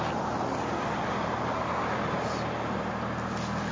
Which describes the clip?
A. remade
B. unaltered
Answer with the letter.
B